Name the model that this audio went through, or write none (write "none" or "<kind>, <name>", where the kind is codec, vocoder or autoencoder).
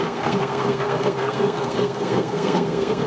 codec, SNAC